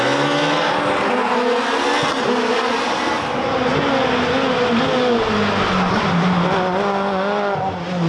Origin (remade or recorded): recorded